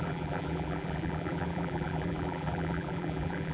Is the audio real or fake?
fake